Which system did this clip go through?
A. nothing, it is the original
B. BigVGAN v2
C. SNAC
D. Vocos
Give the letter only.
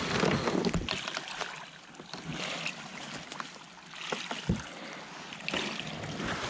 A